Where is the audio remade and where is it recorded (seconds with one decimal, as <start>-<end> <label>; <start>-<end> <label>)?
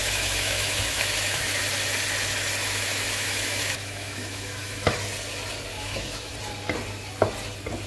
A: 0.0-1.6 remade; 1.6-2.6 recorded; 2.6-4.9 remade; 4.9-5.7 recorded; 5.7-6.3 remade; 6.3-7.9 recorded